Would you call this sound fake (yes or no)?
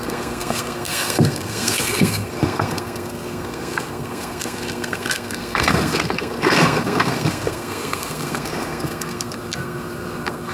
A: yes